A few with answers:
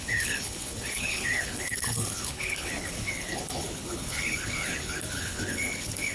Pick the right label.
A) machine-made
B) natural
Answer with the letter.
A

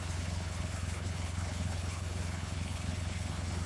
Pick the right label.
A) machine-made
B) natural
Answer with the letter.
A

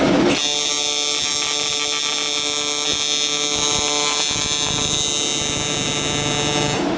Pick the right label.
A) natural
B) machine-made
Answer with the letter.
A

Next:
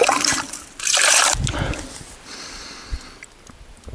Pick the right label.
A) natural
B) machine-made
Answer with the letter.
A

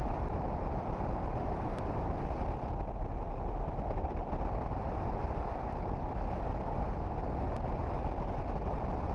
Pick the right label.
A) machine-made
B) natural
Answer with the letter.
B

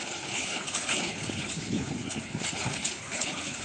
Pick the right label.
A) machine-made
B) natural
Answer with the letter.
A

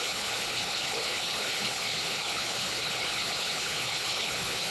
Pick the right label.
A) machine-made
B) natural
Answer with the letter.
A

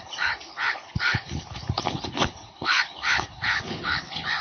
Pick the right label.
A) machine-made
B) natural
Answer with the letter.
A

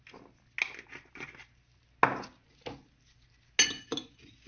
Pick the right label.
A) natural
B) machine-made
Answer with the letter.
A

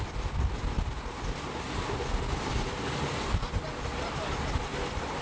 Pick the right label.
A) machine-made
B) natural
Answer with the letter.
B